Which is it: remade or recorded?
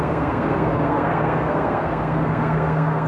remade